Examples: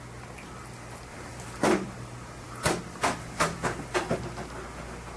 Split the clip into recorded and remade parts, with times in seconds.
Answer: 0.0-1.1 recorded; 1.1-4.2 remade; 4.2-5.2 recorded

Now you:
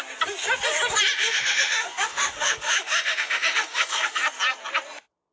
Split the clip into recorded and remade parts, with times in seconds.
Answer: 0.0-1.2 recorded; 1.2-4.2 remade; 4.2-5.3 recorded

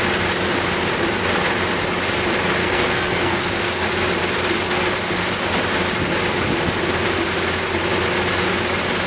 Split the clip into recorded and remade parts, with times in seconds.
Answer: 0.0-2.6 recorded; 2.6-3.7 remade; 3.7-9.1 recorded

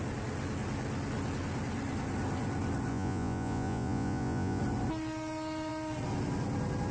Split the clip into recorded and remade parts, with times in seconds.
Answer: 0.0-2.9 recorded; 2.9-4.6 remade; 4.6-6.9 recorded

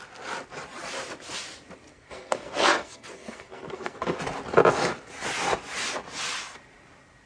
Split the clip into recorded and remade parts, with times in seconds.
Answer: 0.0-1.9 recorded; 1.9-4.2 remade; 4.2-7.3 recorded